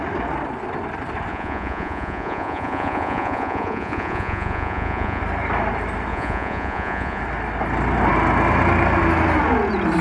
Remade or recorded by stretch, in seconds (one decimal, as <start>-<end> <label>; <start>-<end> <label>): 0.0-1.3 recorded; 1.3-5.2 remade; 5.2-6.1 recorded; 6.1-7.2 remade; 7.2-10.0 recorded